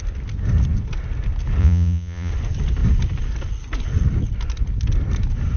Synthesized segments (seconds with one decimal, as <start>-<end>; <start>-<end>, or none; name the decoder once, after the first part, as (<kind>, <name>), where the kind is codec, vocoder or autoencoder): 1.6-2.3 (vocoder, Vocos)